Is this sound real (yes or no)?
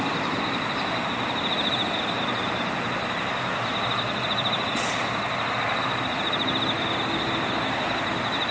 yes